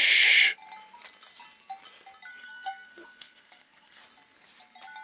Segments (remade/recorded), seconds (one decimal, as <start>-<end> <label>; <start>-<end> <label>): 0.0-2.3 recorded; 2.3-4.0 remade; 4.0-5.0 recorded